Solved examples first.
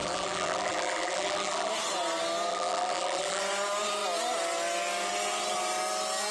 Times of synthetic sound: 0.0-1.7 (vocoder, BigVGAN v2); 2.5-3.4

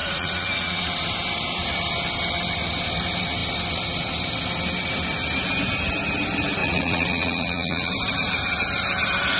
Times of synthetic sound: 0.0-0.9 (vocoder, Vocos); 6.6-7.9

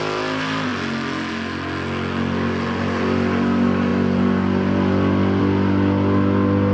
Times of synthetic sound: none

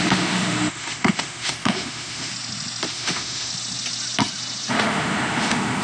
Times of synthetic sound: 0.0-2.3 (autoencoder, DAC-VAE); 2.9-3.5; 4.7-5.8

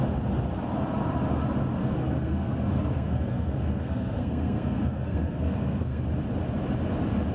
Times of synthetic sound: 1.8-6.0 (codec, SNAC)

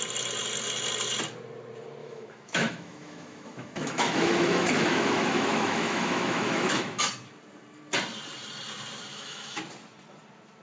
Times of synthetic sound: 2.0-7.0 (autoencoder, DAC-VAE); 9.1-9.6